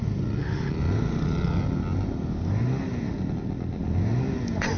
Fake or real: real